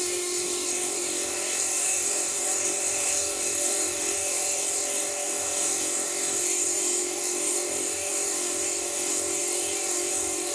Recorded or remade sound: remade